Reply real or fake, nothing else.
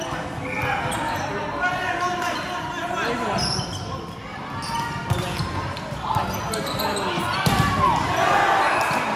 real